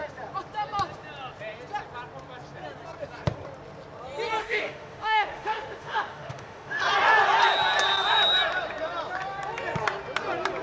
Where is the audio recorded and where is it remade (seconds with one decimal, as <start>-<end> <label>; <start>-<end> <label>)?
0.0-4.4 recorded; 4.4-6.8 remade; 6.8-10.6 recorded